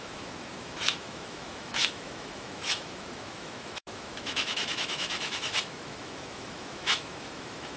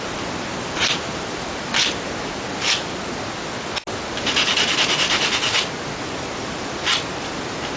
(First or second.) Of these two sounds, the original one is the second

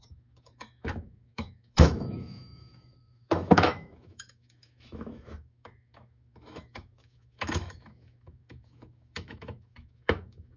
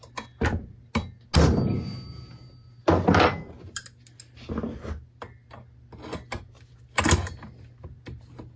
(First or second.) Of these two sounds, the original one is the second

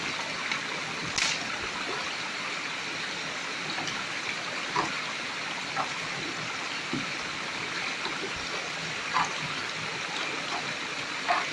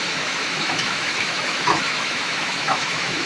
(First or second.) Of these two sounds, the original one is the first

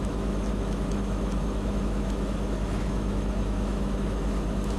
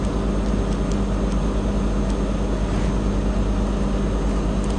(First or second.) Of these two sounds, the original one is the second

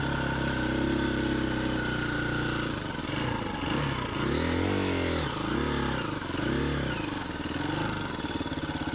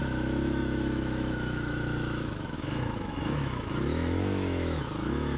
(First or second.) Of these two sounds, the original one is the first